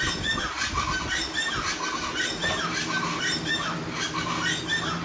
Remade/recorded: recorded